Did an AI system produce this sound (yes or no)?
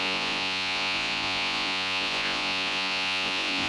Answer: yes